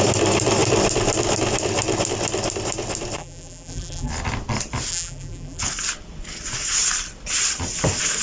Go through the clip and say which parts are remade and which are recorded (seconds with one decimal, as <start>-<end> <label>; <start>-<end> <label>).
0.0-3.2 recorded; 3.2-4.1 remade; 4.1-4.9 recorded; 4.9-5.6 remade; 5.6-8.2 recorded